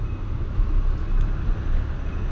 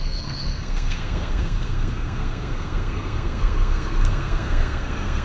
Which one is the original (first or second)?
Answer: first